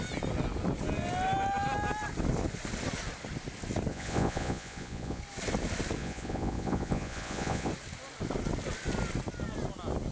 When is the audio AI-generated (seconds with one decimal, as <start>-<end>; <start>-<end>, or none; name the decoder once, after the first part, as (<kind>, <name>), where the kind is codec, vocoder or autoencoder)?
3.9-5.2 (vocoder, Vocos); 6.0-7.7